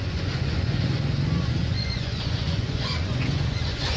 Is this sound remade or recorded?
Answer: remade